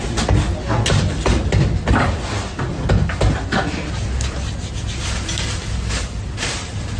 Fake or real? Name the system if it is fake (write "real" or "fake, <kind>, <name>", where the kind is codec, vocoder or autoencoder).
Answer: real